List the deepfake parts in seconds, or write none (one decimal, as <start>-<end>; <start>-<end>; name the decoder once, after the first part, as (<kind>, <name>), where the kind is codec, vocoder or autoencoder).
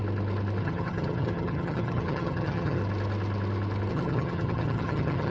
0.6-2.8 (vocoder, HiFi-GAN); 3.9-5.3